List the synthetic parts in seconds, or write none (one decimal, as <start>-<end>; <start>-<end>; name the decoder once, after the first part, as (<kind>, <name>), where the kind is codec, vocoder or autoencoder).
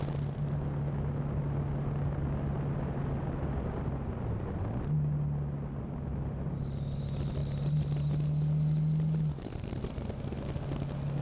none